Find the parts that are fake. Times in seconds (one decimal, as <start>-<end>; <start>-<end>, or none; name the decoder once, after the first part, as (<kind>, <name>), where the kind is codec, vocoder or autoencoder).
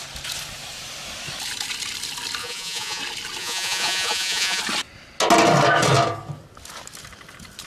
2.4-3.0 (vocoder, Vocos); 3.4-4.6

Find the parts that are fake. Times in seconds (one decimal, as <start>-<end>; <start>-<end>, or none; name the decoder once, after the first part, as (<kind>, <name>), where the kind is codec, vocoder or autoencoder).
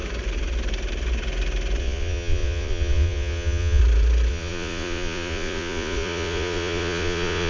1.8-3.8 (vocoder, Vocos); 4.3-7.5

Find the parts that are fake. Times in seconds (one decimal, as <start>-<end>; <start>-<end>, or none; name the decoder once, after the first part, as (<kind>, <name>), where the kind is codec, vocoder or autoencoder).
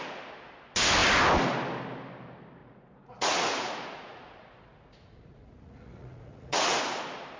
2.6-6.8 (vocoder, Vocos)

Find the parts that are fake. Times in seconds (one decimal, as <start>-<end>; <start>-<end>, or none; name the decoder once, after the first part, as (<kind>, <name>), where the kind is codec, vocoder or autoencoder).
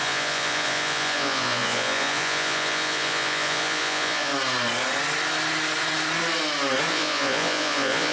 0.0-4.3 (vocoder, Vocos); 6.9-8.1